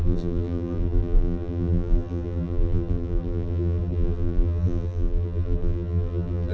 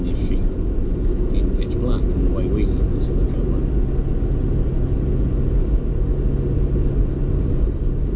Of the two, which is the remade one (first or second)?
first